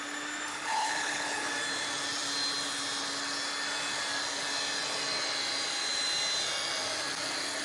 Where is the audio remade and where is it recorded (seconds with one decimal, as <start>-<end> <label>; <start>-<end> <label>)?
0.0-0.5 recorded; 0.5-1.5 remade; 1.5-7.6 recorded